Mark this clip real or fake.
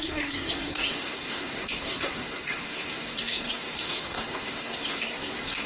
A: fake